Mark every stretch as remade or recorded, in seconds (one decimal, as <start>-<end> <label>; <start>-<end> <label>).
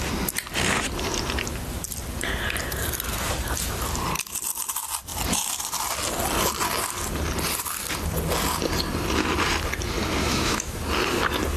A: 0.0-10.2 recorded; 10.2-10.8 remade; 10.8-11.6 recorded